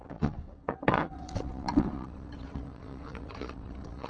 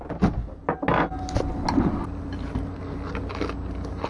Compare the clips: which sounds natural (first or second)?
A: second